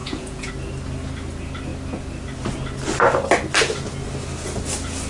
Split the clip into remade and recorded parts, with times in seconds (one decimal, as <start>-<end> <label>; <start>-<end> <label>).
0.0-0.5 remade; 0.5-5.1 recorded